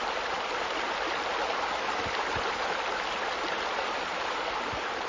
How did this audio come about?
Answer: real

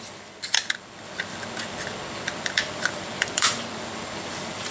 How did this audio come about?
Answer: fake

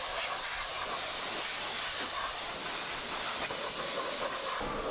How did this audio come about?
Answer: real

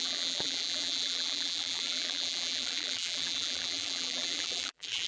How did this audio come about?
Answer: fake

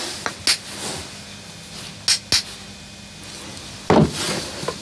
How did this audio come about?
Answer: real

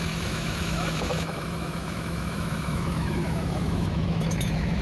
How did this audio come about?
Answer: fake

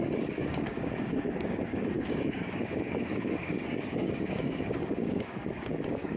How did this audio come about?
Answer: fake